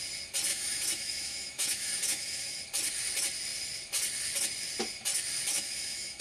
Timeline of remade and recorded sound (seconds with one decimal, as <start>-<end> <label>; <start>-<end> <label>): 0.0-0.5 recorded; 0.5-2.6 remade; 2.6-5.5 recorded; 5.5-6.2 remade